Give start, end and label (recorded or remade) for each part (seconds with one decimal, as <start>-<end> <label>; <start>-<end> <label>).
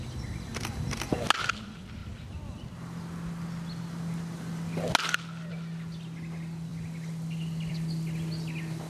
0.0-8.9 recorded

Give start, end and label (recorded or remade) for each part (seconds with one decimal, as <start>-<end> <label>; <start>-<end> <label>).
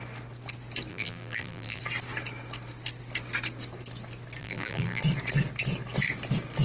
0.0-0.9 recorded; 0.9-1.8 remade; 1.8-4.4 recorded; 4.4-5.0 remade; 5.0-6.6 recorded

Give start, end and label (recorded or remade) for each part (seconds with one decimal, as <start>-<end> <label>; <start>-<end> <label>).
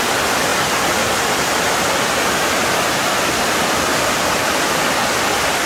0.0-5.7 recorded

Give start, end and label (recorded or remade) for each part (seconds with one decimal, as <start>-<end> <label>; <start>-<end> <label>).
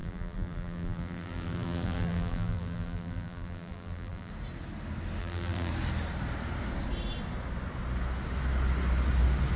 0.0-4.3 remade; 4.3-5.2 recorded; 5.2-5.7 remade; 5.7-9.6 recorded